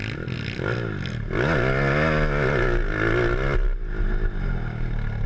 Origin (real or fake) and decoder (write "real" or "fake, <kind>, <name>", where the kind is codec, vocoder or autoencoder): real